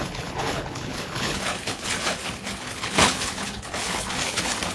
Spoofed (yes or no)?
yes